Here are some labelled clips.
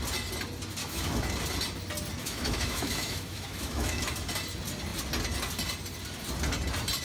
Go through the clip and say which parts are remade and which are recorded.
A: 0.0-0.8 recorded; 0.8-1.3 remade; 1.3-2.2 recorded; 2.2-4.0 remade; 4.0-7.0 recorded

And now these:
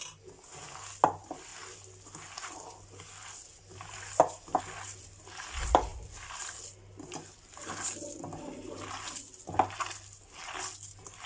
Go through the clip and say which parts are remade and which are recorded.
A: 0.0-11.3 recorded

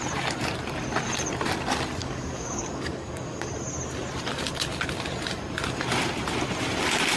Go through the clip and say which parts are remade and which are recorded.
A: 0.0-2.0 recorded; 2.0-3.5 remade; 3.5-7.2 recorded

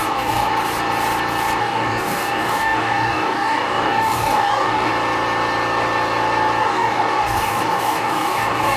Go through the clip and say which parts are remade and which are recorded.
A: 0.0-0.5 remade; 0.5-1.6 recorded; 1.6-4.9 remade; 4.9-6.6 recorded; 6.6-8.8 remade

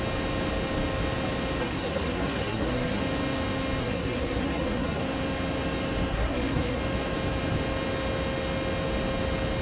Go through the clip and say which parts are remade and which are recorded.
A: 0.0-1.6 recorded; 1.6-3.0 remade; 3.0-3.8 recorded; 3.8-5.0 remade; 5.0-6.1 recorded; 6.1-6.8 remade; 6.8-9.6 recorded

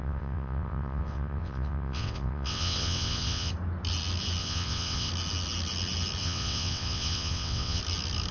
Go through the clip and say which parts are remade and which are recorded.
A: 0.0-3.5 remade; 3.5-4.4 recorded; 4.4-5.1 remade; 5.1-6.2 recorded; 6.2-7.8 remade; 7.8-8.3 recorded